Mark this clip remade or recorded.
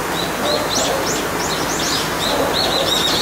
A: recorded